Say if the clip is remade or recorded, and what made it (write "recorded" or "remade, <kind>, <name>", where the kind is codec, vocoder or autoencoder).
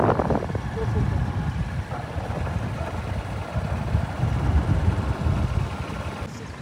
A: recorded